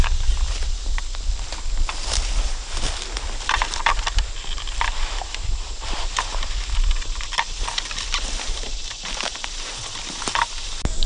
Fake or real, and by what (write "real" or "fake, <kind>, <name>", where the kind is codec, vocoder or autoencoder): real